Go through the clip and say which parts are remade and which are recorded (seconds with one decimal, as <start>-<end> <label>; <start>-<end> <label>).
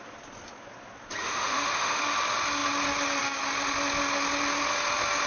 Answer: 0.0-1.2 recorded; 1.2-2.0 remade; 2.0-5.3 recorded